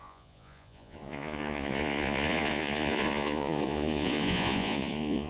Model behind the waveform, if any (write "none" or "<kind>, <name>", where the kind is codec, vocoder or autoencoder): vocoder, Vocos